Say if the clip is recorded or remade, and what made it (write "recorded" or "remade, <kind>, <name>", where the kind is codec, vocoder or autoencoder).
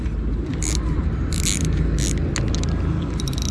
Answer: recorded